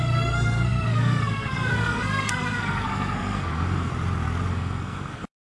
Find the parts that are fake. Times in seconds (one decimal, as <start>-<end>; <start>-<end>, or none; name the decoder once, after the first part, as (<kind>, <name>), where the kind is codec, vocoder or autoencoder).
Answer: 0.0-3.9 (codec, SNAC); 4.5-5.4